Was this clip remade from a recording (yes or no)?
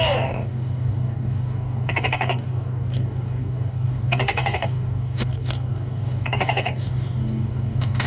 yes